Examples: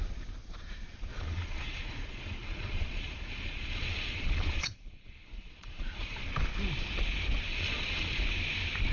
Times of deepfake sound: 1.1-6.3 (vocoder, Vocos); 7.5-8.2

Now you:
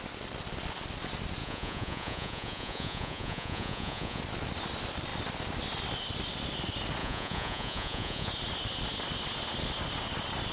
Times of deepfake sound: 1.4-4.2 (vocoder, Vocos); 7.0-8.3

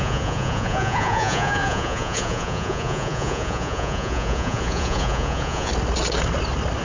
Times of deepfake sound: 0.0-5.7 (vocoder, Vocos)

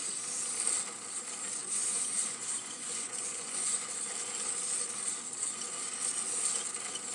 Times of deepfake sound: 1.6-3.9 (vocoder, Vocos)